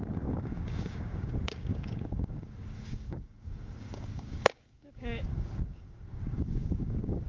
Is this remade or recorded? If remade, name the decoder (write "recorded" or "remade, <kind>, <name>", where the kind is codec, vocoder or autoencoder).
remade, codec, DAC